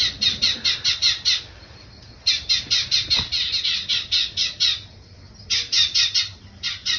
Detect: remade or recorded recorded